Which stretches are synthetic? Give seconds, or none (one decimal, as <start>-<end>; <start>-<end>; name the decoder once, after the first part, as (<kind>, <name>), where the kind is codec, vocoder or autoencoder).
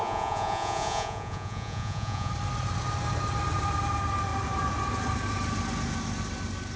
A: 0.0-2.3 (vocoder, Vocos)